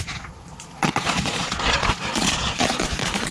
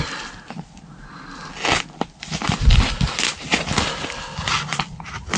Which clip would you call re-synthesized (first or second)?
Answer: first